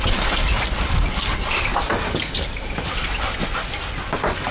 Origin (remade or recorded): recorded